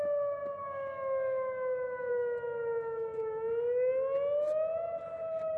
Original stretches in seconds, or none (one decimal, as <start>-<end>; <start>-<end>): 0.0-5.6